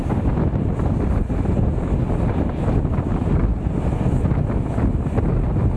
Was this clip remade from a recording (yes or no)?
no